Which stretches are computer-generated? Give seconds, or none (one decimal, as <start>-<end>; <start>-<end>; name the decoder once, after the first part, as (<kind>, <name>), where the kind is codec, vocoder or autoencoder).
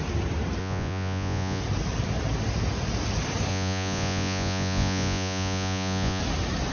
0.6-1.6 (vocoder, Vocos); 3.5-6.2